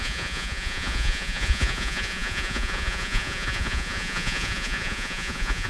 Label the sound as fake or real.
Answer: fake